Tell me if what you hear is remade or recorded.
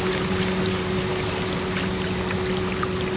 recorded